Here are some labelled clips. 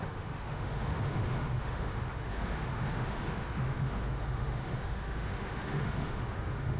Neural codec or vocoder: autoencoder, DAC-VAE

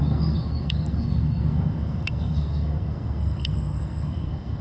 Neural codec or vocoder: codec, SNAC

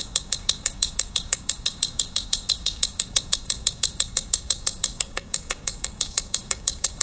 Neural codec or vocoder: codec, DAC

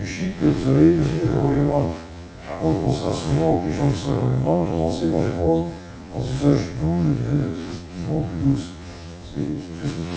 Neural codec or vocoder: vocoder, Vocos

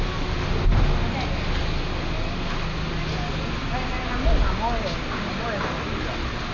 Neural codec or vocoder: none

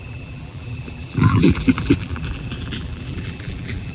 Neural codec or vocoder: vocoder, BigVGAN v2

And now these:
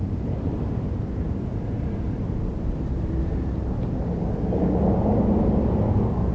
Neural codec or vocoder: none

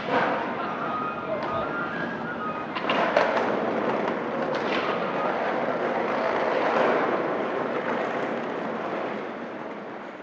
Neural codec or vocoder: none